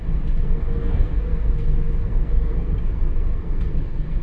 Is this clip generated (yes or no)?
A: yes